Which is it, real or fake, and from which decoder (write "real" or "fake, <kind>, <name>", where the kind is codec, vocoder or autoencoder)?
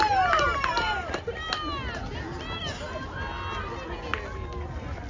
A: real